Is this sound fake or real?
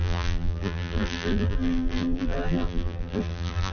fake